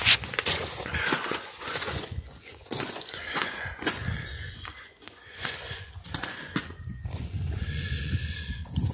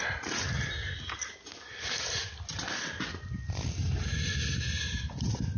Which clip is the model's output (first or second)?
first